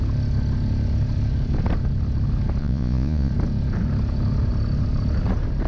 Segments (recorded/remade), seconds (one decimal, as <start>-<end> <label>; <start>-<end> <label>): 0.0-2.6 recorded; 2.6-3.3 remade; 3.3-5.7 recorded